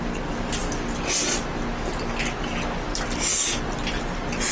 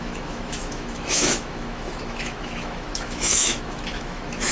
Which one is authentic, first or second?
first